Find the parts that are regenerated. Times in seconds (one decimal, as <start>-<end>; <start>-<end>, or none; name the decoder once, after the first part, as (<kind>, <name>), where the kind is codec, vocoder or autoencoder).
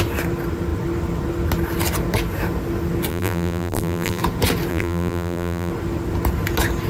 3.1-4.2 (vocoder, BigVGAN v2); 4.7-5.7